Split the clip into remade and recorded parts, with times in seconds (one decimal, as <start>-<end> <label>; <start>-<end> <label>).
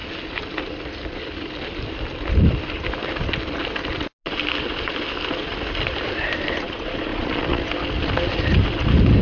0.0-7.1 recorded; 7.1-7.7 remade; 7.7-9.2 recorded